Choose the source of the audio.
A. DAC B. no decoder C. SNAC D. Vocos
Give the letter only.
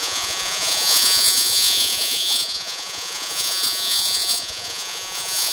D